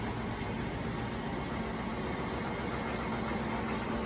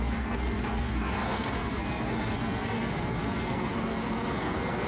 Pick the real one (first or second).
first